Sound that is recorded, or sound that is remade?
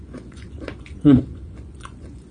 remade